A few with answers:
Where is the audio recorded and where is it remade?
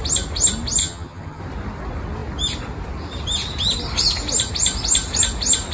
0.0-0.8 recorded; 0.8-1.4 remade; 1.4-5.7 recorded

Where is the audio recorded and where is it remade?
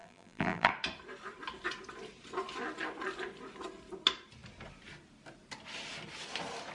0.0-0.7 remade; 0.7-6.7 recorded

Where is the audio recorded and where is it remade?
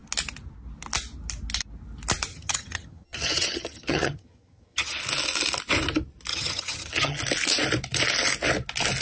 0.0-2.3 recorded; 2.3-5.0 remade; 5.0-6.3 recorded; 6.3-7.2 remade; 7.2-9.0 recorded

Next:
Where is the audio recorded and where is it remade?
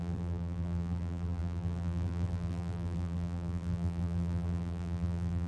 0.0-5.5 remade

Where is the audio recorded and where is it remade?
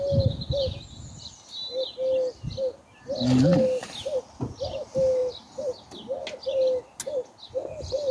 0.0-8.1 recorded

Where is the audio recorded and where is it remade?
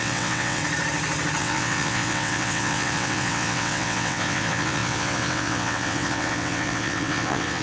0.0-0.6 remade; 0.6-1.4 recorded; 1.4-7.6 remade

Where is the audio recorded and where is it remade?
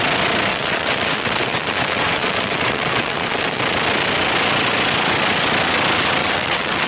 0.0-0.5 recorded; 0.5-3.6 remade; 3.6-6.2 recorded; 6.2-6.9 remade